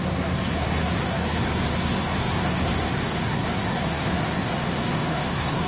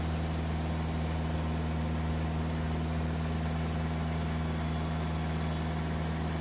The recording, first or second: second